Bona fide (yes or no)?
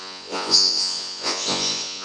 no